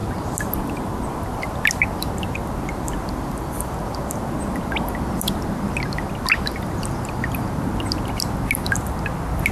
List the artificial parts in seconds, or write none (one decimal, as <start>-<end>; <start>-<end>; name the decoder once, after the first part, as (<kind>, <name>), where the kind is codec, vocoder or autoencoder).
none